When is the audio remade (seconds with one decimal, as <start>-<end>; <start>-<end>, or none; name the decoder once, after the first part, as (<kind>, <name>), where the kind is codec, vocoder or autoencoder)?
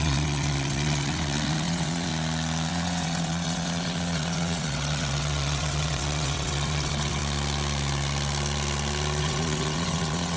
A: 0.0-2.1 (vocoder, WaveNeXt); 2.7-7.2; 9.2-10.4